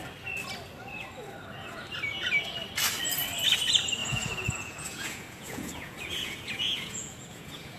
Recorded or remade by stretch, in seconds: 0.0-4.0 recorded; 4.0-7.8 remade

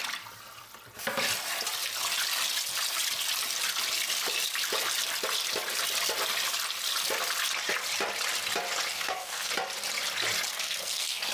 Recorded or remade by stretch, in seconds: 0.0-8.9 recorded; 8.9-9.5 remade; 9.5-10.5 recorded; 10.5-11.3 remade

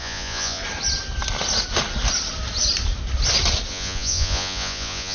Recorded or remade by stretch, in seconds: 0.0-0.6 remade; 0.6-3.7 recorded; 3.7-5.1 remade

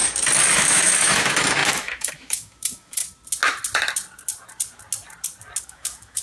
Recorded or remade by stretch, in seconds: 0.0-0.5 recorded; 0.5-3.0 remade; 3.0-5.6 recorded; 5.6-6.2 remade

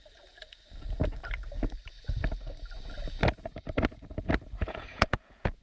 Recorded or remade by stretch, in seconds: 0.0-4.6 recorded; 4.6-5.6 remade

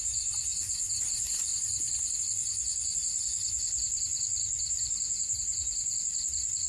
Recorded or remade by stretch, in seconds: 0.0-6.7 recorded

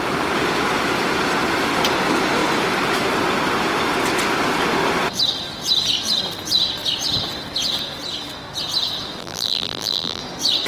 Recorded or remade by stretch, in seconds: 0.0-9.2 recorded; 9.2-10.2 remade; 10.2-10.7 recorded

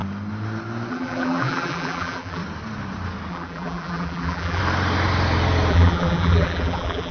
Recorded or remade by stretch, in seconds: 0.0-0.9 recorded; 0.9-2.4 remade; 2.4-3.3 recorded; 3.3-4.6 remade; 4.6-5.7 recorded; 5.7-7.1 remade